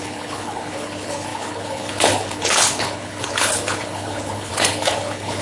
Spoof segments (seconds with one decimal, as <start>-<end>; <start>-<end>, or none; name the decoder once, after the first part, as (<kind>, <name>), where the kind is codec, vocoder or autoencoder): 0.0-5.4 (codec, HILCodec)